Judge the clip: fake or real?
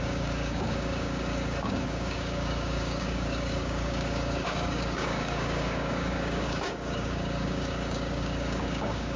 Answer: fake